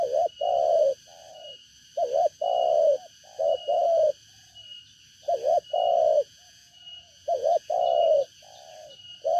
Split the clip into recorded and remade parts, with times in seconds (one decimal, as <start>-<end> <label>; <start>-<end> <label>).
0.0-6.1 recorded; 6.1-7.6 remade; 7.6-9.4 recorded